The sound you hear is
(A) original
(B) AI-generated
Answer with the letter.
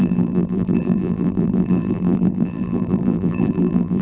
B